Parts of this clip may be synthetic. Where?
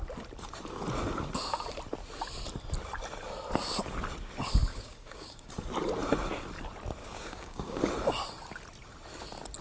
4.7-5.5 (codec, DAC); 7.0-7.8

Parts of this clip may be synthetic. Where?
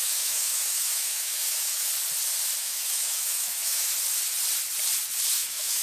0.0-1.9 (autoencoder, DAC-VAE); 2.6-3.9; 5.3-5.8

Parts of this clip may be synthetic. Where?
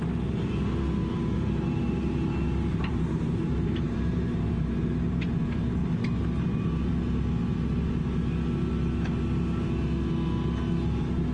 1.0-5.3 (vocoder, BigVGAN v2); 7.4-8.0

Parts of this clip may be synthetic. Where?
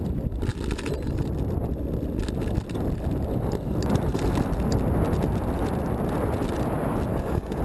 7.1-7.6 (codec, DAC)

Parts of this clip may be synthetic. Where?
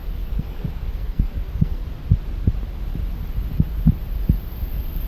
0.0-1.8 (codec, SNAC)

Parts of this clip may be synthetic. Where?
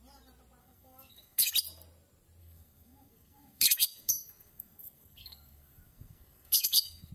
0.6-1.5 (codec, SNAC); 2.4-7.1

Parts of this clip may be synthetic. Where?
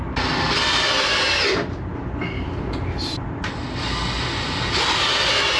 none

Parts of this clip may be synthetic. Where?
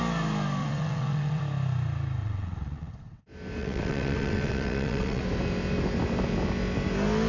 0.6-1.4 (vocoder, WaveNeXt); 2.2-3.2; 3.6-5.2